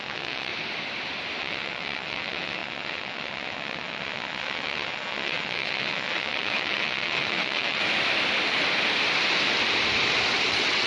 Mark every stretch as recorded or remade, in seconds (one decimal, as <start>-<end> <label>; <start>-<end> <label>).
0.0-0.5 remade; 0.5-1.4 recorded; 1.4-7.8 remade; 7.8-10.5 recorded; 10.5-10.9 remade